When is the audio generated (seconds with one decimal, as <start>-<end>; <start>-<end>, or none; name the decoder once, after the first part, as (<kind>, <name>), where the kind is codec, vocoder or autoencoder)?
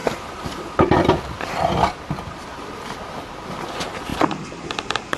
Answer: 0.0-3.1 (vocoder, BigVGAN v2); 4.1-4.7